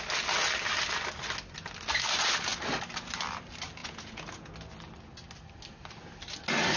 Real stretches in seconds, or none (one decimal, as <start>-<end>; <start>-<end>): 0.0-3.8; 4.5-6.8